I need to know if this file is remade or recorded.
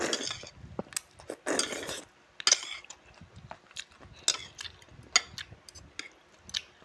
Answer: recorded